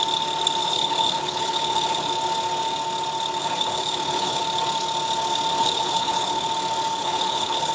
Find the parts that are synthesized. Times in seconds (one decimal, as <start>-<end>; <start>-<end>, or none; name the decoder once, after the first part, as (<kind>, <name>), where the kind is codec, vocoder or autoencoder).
0.6-2.1 (codec, HILCodec); 3.4-4.4; 5.6-6.5; 7.0-7.7